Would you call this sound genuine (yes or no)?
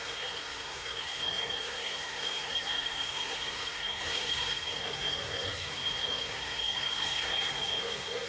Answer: no